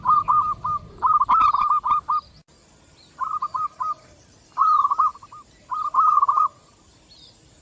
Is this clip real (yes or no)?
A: no